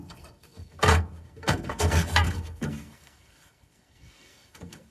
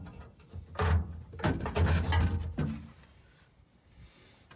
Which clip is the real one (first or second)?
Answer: second